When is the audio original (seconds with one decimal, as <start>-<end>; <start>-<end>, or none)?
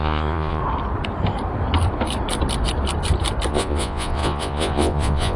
0.6-3.5